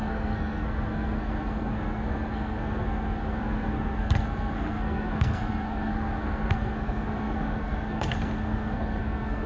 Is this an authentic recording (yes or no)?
no